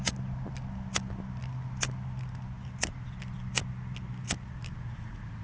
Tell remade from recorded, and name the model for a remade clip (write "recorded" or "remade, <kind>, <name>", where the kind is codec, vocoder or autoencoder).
recorded